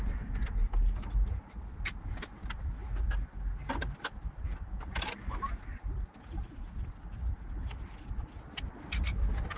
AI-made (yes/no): no